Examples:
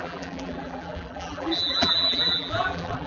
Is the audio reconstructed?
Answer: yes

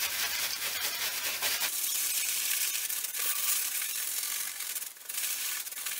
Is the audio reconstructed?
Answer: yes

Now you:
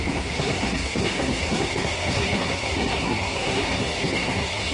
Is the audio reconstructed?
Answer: yes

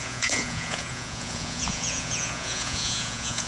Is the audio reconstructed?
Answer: yes